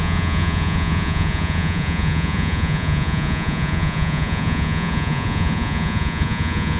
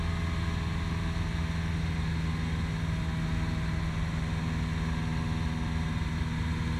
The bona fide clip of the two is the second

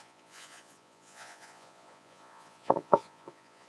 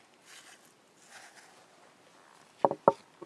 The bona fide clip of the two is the second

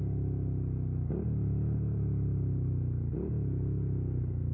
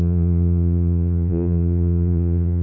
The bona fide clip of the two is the first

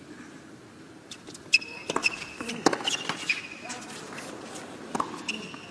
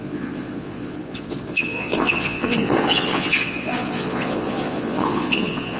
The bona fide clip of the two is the first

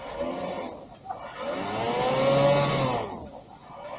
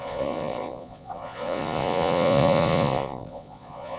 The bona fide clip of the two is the first